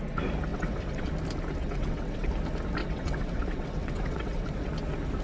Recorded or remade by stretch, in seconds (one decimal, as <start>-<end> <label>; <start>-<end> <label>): 0.0-0.5 recorded; 0.5-1.1 remade; 1.1-1.6 recorded; 1.6-2.3 remade; 2.3-2.8 recorded; 2.8-4.7 remade; 4.7-5.2 recorded